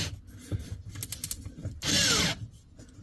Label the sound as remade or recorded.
recorded